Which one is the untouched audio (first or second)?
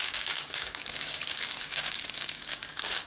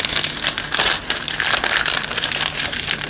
second